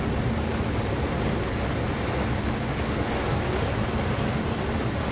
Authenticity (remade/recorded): recorded